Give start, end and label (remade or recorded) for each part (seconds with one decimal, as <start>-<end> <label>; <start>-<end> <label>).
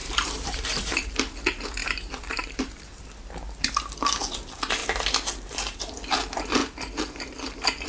0.0-0.8 remade; 0.8-1.8 recorded; 1.8-3.1 remade; 3.1-4.8 recorded; 4.8-5.8 remade; 5.8-7.9 recorded